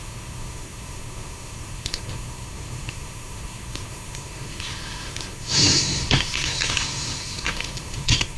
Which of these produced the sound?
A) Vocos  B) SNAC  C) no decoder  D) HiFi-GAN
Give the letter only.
B